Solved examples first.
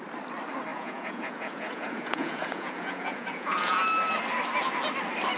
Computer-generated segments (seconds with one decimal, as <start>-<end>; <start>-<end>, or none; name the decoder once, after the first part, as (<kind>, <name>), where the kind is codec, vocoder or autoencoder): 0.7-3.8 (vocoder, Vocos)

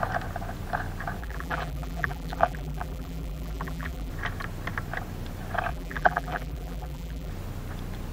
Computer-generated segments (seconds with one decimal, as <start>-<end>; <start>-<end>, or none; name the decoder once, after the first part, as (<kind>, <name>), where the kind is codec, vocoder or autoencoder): 1.2-4.1 (vocoder, BigVGAN v2); 5.7-7.3

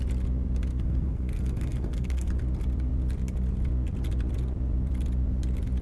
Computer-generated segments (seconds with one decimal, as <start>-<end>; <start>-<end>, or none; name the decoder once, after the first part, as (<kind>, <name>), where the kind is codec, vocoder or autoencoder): 0.7-2.3 (codec, SNAC)

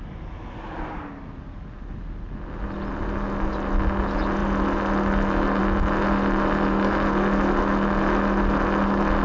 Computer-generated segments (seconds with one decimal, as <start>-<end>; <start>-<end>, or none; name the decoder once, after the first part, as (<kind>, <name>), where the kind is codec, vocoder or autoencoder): none

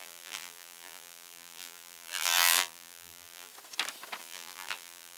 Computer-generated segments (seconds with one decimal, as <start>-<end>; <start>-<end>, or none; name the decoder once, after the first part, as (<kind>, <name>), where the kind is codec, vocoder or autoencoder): 0.0-3.5 (vocoder, BigVGAN v2); 4.2-5.2

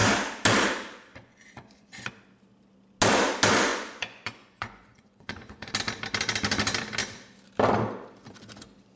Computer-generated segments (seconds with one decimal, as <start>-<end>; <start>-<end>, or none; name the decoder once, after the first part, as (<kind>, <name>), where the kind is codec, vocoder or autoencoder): 1.1-2.1 (vocoder, Vocos); 3.7-5.7

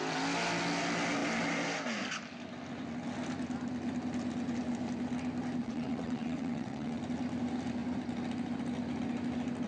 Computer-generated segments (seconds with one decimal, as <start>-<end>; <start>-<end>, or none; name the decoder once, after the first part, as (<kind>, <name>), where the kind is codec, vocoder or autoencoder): 5.6-7.0 (vocoder, WaveNeXt)